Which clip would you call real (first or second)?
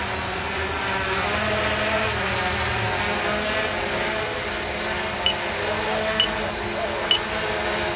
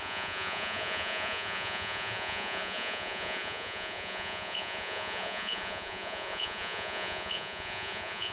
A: first